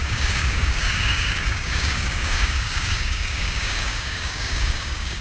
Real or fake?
fake